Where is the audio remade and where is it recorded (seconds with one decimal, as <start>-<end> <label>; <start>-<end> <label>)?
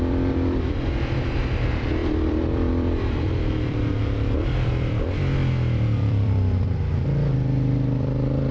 0.0-8.5 remade